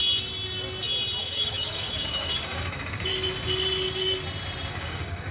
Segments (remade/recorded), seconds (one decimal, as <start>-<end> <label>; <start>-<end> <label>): 0.0-1.2 recorded; 1.2-3.1 remade; 3.1-4.7 recorded; 4.7-5.3 remade